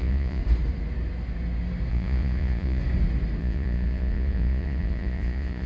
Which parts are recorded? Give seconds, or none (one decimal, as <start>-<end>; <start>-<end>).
0.4-1.9; 2.8-3.4